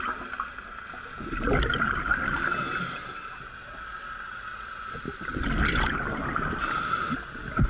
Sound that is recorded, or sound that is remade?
recorded